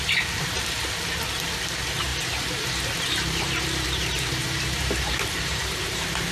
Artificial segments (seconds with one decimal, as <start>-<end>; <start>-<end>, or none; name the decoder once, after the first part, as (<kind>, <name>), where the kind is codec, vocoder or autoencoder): 2.1-6.3 (vocoder, BigVGAN v2)